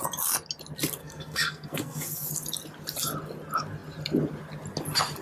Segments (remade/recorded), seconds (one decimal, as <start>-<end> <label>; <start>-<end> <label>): 0.0-1.0 recorded; 1.0-2.3 remade; 2.3-5.2 recorded